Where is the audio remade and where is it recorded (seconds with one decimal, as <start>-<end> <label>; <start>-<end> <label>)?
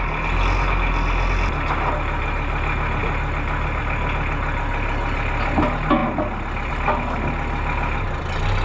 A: 0.0-8.6 recorded